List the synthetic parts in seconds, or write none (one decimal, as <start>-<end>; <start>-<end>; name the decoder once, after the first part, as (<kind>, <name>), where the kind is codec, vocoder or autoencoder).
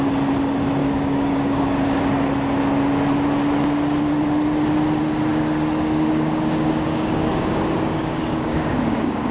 0.8-2.0 (codec, DAC); 5.3-9.3